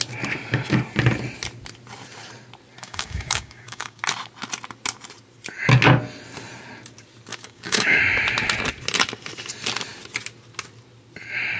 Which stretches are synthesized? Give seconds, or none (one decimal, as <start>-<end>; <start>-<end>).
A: 2.8-4.0; 7.3-8.0